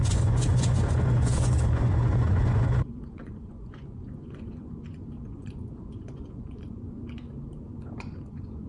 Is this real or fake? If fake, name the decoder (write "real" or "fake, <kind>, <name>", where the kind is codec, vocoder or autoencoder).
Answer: fake, vocoder, Vocos